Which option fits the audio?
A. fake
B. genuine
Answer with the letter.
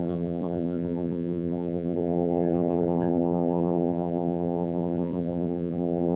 A